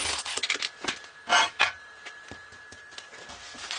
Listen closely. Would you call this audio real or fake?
real